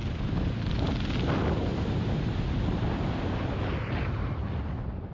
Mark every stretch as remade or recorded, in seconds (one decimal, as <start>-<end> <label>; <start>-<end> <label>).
0.0-0.7 remade; 0.7-1.7 recorded; 1.7-3.3 remade; 3.3-5.1 recorded